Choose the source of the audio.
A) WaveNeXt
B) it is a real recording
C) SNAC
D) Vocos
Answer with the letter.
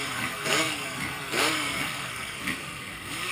C